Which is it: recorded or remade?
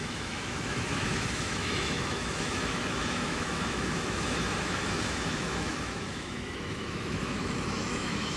remade